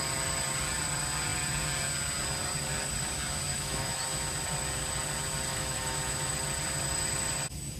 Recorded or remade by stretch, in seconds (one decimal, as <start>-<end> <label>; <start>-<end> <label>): 0.0-3.5 recorded; 3.5-4.0 remade; 4.0-5.5 recorded; 5.5-6.3 remade; 6.3-7.8 recorded